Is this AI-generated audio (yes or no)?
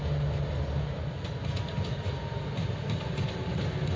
no